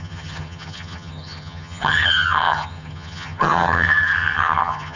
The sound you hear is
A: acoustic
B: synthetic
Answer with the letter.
B